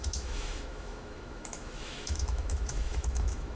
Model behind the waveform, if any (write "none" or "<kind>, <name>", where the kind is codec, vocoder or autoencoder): autoencoder, DAC-VAE